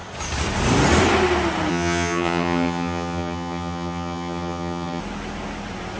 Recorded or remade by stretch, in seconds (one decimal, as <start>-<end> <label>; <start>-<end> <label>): 0.0-1.7 recorded; 1.7-5.0 remade; 5.0-6.0 recorded